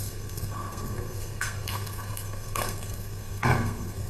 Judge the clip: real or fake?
fake